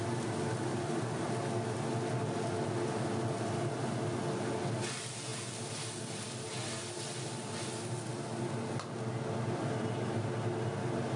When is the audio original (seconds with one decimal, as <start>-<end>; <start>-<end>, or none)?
0.0-0.7; 1.3-11.2